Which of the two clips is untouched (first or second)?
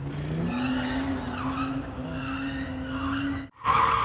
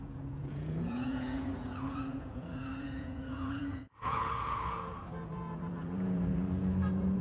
first